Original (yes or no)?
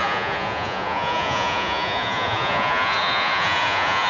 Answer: no